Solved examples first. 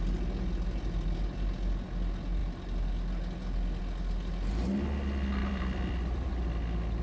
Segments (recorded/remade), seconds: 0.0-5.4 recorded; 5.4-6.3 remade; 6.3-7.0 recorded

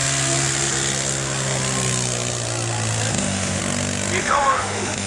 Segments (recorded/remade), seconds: 0.0-3.1 recorded; 3.1-3.6 remade; 3.6-4.2 recorded; 4.2-5.1 remade

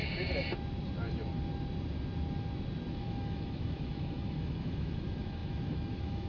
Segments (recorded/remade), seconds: 0.0-2.9 recorded; 2.9-6.3 remade